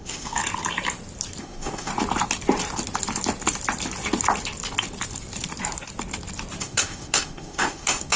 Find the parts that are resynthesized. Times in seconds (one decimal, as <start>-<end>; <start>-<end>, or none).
0.0-0.4; 1.4-1.9; 6.6-8.2